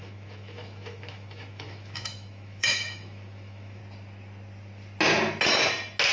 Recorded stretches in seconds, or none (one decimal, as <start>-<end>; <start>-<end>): 3.8-6.1